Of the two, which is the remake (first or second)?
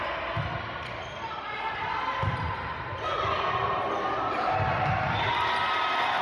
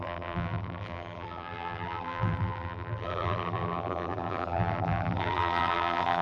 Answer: second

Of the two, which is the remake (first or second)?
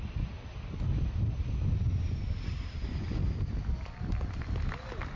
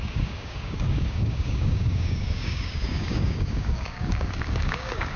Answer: second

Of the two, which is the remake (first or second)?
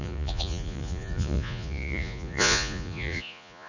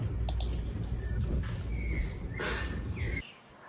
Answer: first